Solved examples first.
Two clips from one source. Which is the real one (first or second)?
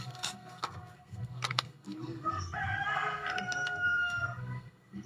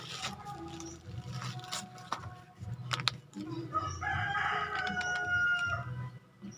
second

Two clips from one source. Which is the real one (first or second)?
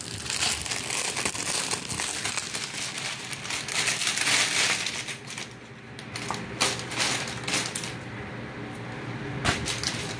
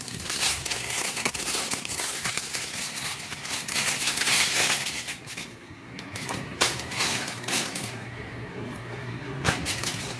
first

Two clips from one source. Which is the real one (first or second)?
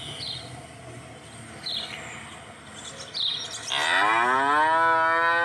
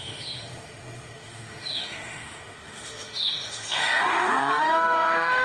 first